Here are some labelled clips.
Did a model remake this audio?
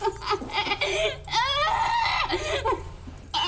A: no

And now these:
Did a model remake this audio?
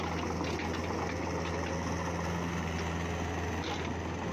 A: no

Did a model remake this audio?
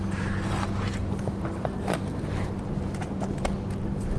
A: no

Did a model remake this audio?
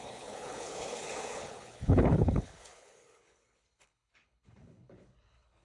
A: yes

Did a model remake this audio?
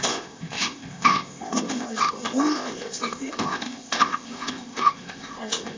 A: yes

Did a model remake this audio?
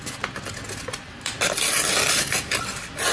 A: no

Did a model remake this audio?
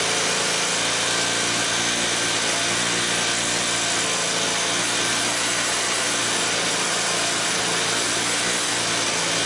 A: no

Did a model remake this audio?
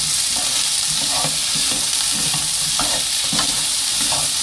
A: no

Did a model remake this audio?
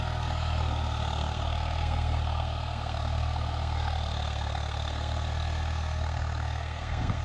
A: yes